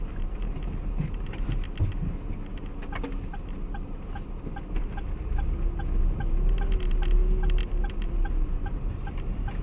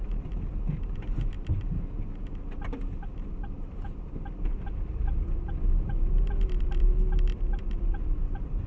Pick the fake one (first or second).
second